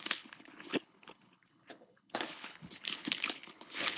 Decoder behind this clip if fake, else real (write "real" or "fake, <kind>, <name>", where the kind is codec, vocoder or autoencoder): fake, codec, HILCodec